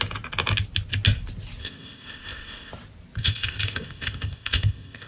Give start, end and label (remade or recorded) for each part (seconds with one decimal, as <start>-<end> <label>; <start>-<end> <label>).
0.0-1.6 recorded; 1.6-2.7 remade; 2.7-3.2 recorded; 3.2-5.1 remade